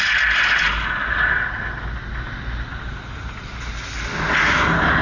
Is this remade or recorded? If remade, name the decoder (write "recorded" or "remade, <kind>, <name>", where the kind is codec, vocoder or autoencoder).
recorded